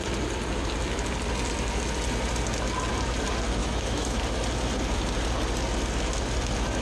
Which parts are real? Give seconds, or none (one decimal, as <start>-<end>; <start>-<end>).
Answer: 0.0-3.6; 4.2-6.8